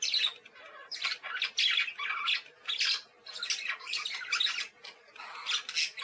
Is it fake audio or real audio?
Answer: real